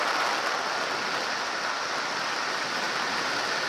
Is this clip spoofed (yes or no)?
no